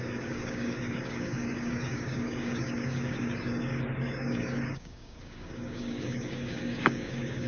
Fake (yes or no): yes